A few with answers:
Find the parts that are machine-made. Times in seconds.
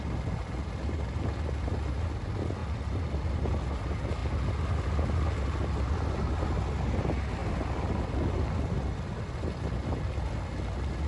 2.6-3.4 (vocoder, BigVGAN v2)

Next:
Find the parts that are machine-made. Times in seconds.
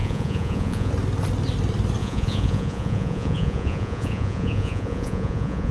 0.0-0.9 (vocoder, Vocos); 2.0-5.7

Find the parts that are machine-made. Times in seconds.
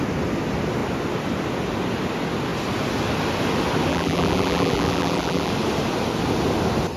3.9-5.5 (vocoder, BigVGAN v2)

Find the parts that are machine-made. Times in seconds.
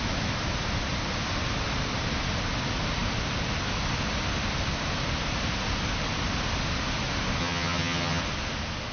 7.4-8.2 (vocoder, HiFi-GAN)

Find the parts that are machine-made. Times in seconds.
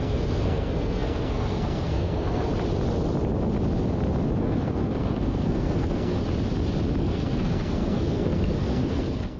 0.0-2.5 (codec, SNAC); 4.4-6.2; 7.0-9.4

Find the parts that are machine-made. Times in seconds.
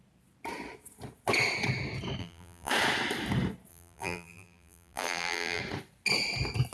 2.2-2.7 (vocoder, BigVGAN v2); 3.7-5.6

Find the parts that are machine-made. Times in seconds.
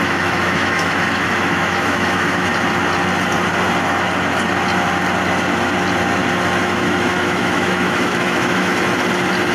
0.0-2.5 (autoencoder, DAC-VAE); 6.6-8.7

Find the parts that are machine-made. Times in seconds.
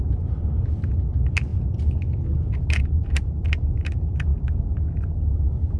none